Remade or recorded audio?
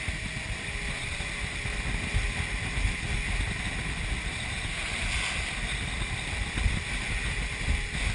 recorded